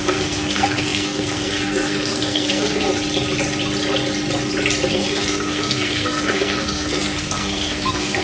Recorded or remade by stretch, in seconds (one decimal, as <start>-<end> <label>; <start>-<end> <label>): 0.0-2.9 remade; 2.9-4.9 recorded; 4.9-8.2 remade